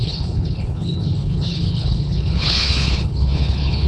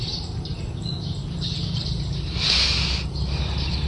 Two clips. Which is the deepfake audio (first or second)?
first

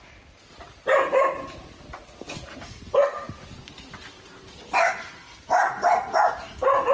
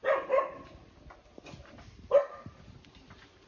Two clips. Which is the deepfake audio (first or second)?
second